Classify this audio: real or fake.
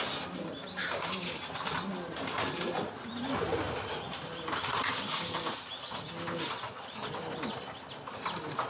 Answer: real